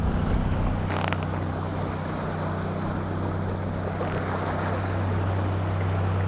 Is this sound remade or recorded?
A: recorded